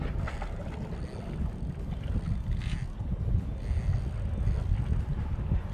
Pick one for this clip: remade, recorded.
recorded